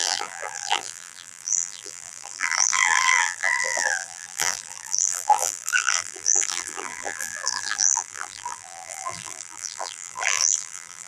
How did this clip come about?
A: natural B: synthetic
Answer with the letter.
B